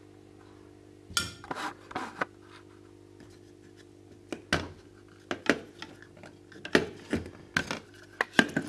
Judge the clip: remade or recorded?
recorded